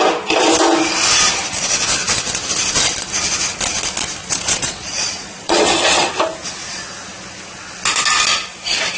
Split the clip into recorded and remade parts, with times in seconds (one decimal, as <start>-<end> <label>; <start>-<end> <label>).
0.0-4.2 recorded; 4.2-6.1 remade; 6.1-9.0 recorded